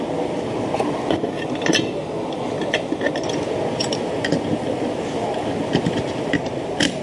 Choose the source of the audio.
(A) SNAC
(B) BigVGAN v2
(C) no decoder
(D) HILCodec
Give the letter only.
C